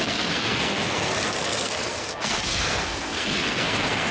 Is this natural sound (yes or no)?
no